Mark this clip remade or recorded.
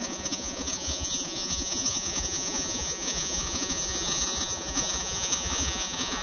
remade